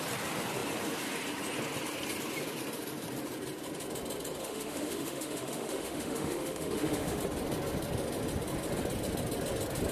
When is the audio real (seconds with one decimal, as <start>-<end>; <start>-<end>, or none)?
0.0-4.4; 7.2-9.9